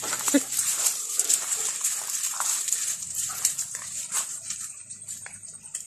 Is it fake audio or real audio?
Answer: fake